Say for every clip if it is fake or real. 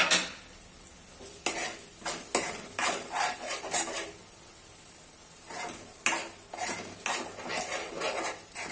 real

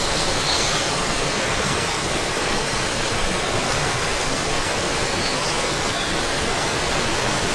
fake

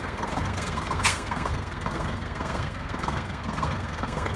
fake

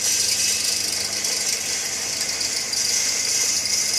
real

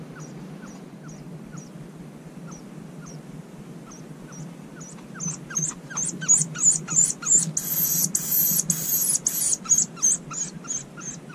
real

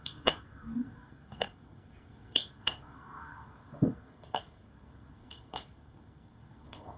fake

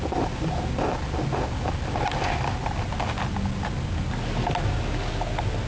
real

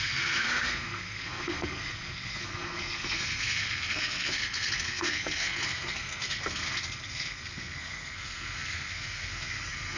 fake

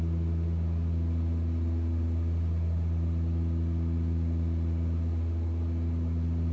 real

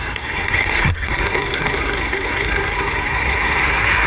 fake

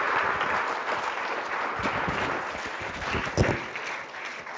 real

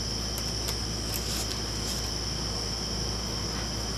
real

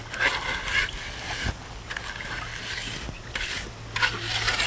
real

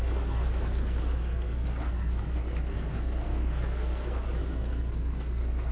fake